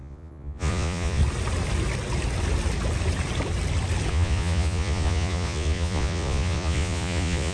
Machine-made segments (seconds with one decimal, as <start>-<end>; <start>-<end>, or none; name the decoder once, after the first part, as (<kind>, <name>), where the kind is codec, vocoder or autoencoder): 0.0-1.2 (vocoder, Vocos); 4.1-7.5